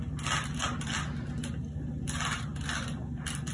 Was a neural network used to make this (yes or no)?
no